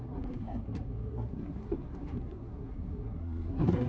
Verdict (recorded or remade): remade